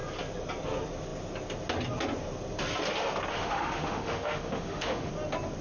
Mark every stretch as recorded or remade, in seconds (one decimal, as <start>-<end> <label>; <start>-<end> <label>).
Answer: 0.0-3.3 recorded; 3.3-5.1 remade; 5.1-5.6 recorded